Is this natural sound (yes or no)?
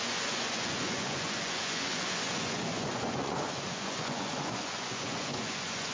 no